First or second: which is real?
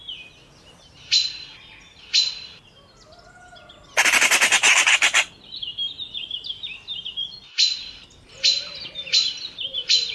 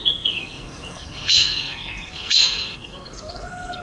first